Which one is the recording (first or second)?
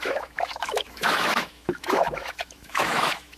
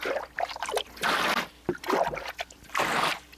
second